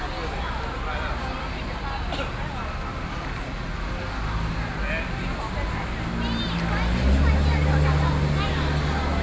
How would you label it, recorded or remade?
recorded